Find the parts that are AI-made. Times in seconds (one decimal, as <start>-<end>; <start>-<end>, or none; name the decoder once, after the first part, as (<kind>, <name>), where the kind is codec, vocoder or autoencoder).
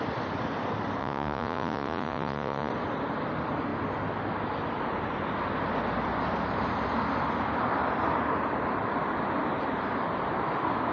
1.0-2.7 (vocoder, Vocos)